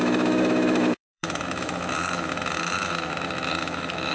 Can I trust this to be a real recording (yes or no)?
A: no